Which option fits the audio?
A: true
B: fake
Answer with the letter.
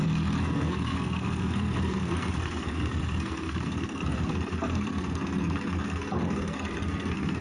B